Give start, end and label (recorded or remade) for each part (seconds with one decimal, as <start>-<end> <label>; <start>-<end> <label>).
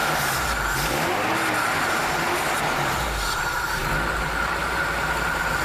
0.0-3.4 recorded; 3.4-5.6 remade